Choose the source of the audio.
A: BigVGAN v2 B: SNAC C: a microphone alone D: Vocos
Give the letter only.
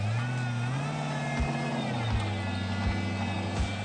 C